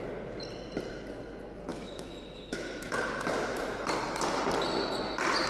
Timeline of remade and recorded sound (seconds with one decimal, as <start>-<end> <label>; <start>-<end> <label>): 0.0-1.7 recorded; 1.7-2.9 remade; 2.9-5.5 recorded